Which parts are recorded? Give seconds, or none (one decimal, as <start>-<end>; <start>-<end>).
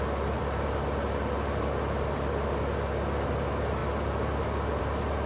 0.0-5.3